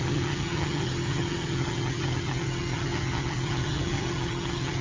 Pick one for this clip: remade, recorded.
remade